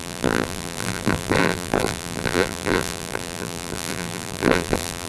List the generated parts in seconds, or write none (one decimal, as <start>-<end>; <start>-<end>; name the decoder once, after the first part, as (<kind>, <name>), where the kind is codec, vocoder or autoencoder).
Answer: 0.0-5.1 (vocoder, BigVGAN v2)